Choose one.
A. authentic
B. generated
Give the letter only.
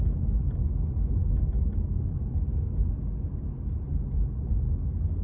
A